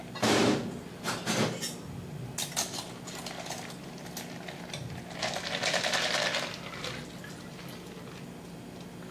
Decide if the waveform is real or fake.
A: real